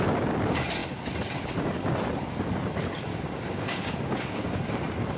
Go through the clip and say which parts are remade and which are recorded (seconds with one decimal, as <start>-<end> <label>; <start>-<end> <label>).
0.0-3.1 recorded; 3.1-4.6 remade; 4.6-5.2 recorded